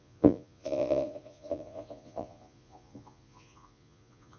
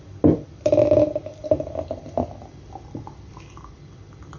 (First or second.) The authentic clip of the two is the second